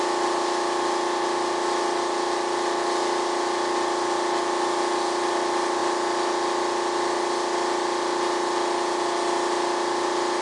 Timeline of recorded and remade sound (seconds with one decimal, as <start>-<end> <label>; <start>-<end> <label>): 0.0-10.4 recorded